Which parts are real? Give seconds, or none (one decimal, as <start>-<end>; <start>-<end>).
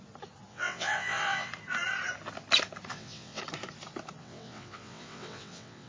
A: 0.0-0.5; 1.5-2.9; 3.4-4.2